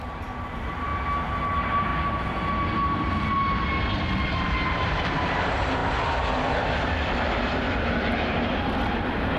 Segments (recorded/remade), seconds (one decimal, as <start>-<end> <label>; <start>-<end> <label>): 0.0-0.9 remade; 0.9-1.5 recorded; 1.5-1.9 remade; 1.9-3.9 recorded; 3.9-5.8 remade; 5.8-7.8 recorded; 7.8-9.4 remade